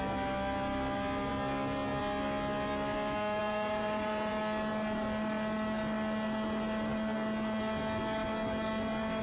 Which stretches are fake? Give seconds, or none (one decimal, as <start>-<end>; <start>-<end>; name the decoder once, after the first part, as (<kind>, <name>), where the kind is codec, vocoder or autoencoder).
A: 3.4-4.3 (vocoder, Vocos)